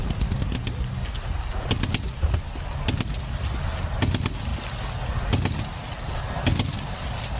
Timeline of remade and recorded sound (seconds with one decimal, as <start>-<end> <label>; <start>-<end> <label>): 0.0-7.4 recorded